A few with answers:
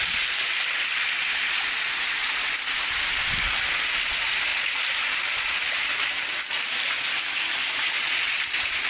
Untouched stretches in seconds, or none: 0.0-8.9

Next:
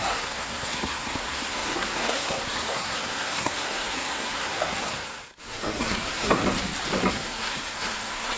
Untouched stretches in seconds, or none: 6.4-7.1

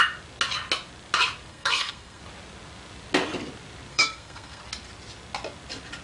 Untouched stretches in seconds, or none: 0.0-1.5; 2.2-3.9; 4.6-6.0